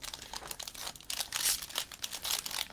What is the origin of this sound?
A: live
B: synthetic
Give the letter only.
A